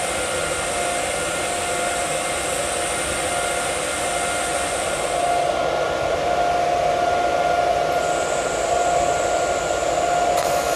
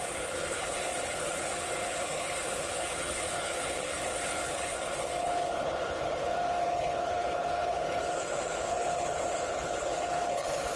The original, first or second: first